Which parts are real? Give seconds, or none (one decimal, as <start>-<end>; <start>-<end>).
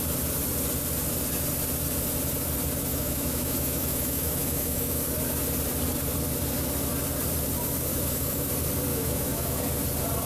0.0-2.9; 5.0-7.9; 8.5-8.9; 9.6-10.3